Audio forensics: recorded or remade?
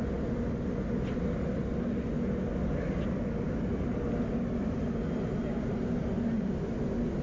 recorded